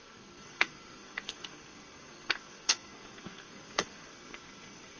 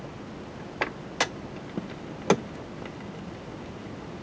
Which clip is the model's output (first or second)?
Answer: first